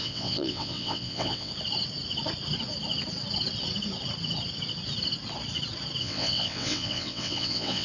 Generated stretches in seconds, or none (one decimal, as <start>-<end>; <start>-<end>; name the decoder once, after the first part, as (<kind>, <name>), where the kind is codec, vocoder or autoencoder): 0.0-1.5 (vocoder, WaveNeXt); 6.0-7.8